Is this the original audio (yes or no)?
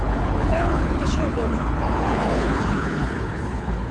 no